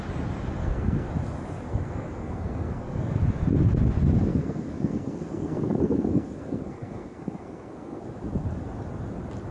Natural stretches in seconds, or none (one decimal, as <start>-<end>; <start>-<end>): 0.0-0.6; 1.1-1.7; 3.2-4.3; 8.0-9.5